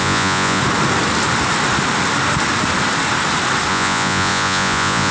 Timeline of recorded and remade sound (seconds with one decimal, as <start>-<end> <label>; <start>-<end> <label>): 0.0-0.6 remade; 0.6-3.7 recorded; 3.7-5.1 remade